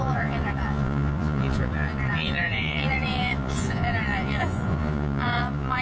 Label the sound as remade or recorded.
remade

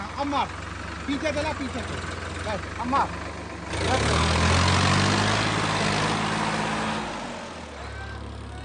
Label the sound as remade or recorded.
recorded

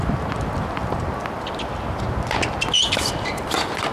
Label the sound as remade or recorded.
recorded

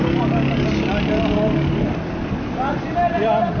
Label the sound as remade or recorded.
recorded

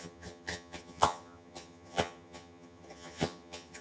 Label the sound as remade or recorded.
remade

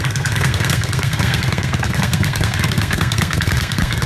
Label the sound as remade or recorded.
remade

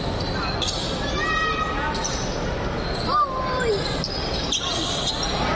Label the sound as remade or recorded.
recorded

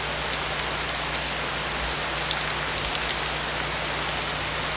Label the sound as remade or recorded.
recorded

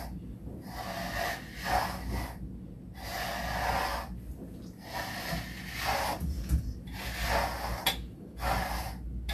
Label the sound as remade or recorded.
recorded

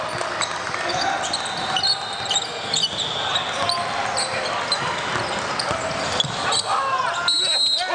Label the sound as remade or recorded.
recorded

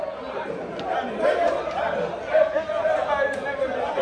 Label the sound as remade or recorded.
recorded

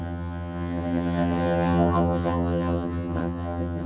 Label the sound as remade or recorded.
remade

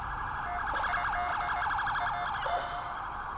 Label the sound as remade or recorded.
recorded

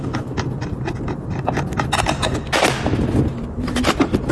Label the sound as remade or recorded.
recorded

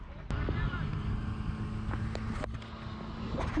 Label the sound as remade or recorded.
recorded